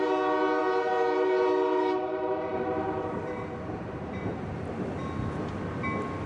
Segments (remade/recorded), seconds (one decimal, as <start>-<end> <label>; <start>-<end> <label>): 0.0-0.6 recorded; 0.6-4.4 remade; 4.4-6.3 recorded